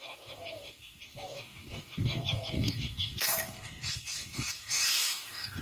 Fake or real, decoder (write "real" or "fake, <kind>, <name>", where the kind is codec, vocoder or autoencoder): fake, codec, DAC